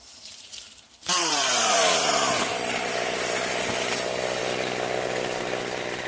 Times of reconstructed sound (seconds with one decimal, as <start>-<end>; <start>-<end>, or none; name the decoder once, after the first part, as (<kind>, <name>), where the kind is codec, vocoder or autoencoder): 1.2-3.5 (vocoder, BigVGAN v2)